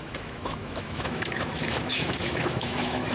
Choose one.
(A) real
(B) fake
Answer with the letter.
B